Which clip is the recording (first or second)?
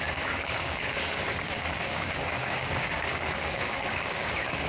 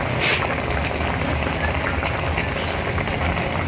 second